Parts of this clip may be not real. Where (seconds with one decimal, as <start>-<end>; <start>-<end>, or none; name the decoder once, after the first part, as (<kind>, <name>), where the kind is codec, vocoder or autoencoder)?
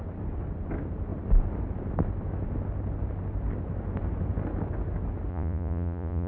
5.3-6.3 (vocoder, Vocos)